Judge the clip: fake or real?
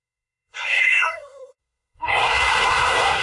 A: fake